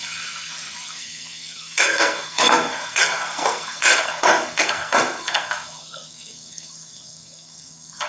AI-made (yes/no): yes